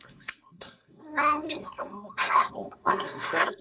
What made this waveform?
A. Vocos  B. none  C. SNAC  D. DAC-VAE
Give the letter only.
C